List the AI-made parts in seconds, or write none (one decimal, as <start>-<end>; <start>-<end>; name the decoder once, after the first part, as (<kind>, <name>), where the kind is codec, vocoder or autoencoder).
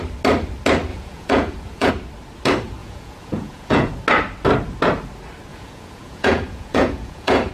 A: 0.9-1.9 (vocoder, Vocos); 2.8-3.9; 5.5-7.5